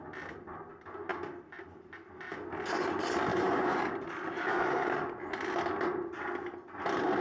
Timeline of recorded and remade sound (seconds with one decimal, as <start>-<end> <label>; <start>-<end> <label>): 0.0-3.3 recorded; 3.3-3.8 remade; 3.8-7.2 recorded